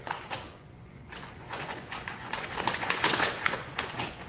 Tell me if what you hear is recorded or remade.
remade